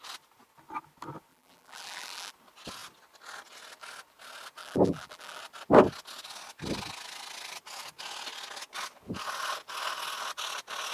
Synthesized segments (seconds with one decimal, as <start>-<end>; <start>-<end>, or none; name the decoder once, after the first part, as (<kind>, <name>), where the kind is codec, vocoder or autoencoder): 1.3-2.3 (vocoder, BigVGAN v2); 4.6-5.4